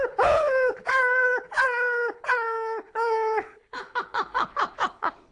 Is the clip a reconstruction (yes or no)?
yes